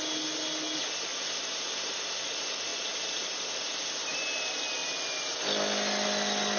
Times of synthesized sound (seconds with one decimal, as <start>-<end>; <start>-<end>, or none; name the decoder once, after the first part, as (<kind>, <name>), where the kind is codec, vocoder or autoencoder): 1.1-2.1 (vocoder, BigVGAN v2); 2.7-3.6